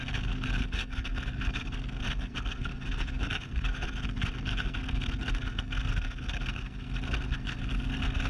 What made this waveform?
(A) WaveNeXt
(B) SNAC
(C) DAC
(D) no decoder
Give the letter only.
B